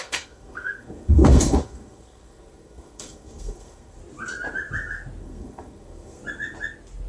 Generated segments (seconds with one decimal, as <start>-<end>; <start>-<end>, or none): 0.0-4.0; 5.2-6.2